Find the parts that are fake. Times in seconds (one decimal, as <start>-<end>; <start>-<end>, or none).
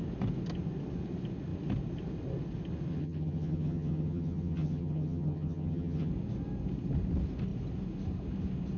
2.9-6.1